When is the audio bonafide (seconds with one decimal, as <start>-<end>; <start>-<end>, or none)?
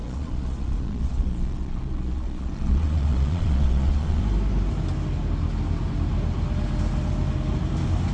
4.2-8.1